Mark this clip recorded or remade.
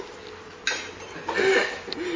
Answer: recorded